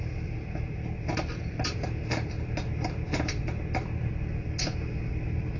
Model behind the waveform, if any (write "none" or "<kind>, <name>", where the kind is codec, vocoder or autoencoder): none